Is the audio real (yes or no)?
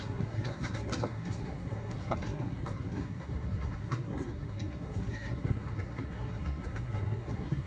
no